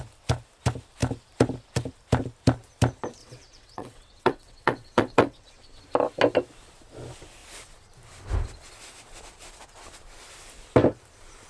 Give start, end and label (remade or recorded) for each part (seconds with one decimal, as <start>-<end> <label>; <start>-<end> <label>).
0.0-3.2 recorded; 3.2-5.8 remade; 5.8-11.5 recorded